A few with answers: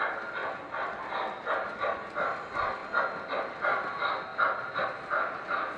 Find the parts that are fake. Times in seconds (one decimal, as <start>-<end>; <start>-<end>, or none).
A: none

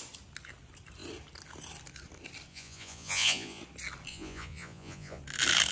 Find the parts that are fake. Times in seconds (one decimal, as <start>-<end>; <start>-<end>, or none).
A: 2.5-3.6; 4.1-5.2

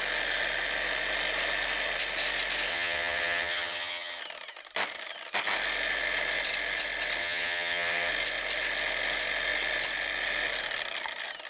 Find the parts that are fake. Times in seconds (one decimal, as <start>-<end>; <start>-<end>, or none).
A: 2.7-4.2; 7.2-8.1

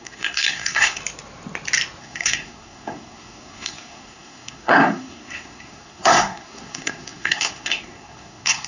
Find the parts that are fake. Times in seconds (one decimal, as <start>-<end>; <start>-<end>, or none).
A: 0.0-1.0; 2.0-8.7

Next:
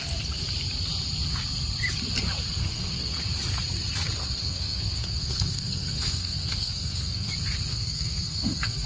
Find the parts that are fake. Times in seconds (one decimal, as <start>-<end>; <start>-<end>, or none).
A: 2.6-3.2; 4.4-7.3; 7.7-8.9

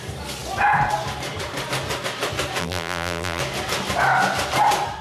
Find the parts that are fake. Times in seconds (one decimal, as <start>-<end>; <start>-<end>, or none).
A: 2.6-3.4

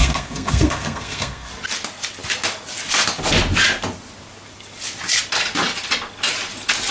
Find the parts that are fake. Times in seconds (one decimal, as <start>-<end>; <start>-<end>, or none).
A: 0.0-1.5

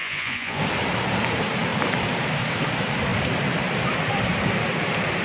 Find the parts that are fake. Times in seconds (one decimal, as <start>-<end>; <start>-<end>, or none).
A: 0.0-0.6